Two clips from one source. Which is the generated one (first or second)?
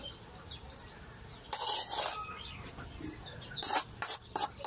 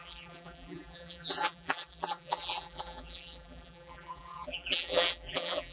second